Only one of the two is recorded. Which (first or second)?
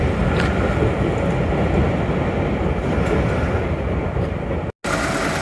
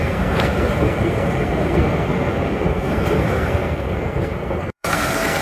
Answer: first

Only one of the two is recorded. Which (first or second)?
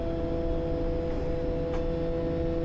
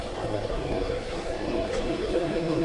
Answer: first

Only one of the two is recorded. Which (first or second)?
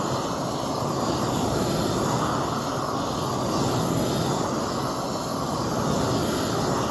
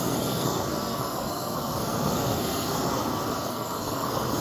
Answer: first